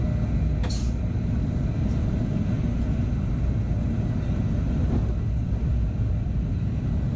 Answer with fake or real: real